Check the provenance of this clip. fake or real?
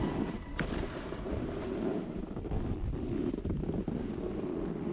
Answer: real